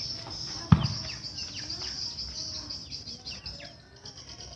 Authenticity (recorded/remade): recorded